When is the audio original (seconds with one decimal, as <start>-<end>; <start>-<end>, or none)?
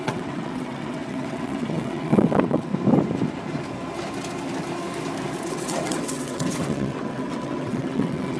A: 2.7-5.5